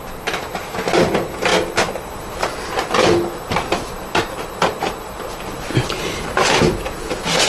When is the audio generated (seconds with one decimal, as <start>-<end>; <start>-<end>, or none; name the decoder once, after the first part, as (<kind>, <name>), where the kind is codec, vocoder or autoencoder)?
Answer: none